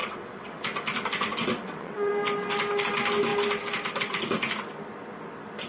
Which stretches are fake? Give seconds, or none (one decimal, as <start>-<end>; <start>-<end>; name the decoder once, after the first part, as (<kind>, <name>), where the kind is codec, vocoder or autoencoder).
0.0-0.6 (vocoder, WaveNeXt); 1.5-2.1